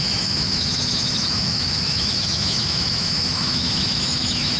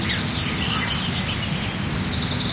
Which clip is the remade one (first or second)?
first